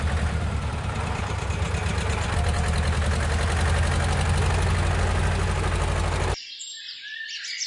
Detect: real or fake real